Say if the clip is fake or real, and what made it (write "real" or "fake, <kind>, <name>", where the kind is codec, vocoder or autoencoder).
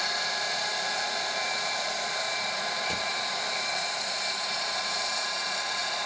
fake, vocoder, BigVGAN v2